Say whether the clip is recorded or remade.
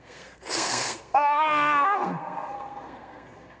remade